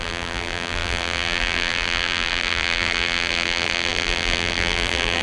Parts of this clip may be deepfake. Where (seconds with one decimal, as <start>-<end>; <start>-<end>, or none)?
0.0-5.2